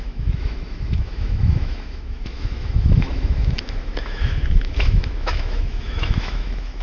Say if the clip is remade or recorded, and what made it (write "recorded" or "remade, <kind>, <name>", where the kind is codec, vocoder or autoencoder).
remade, autoencoder, DAC-VAE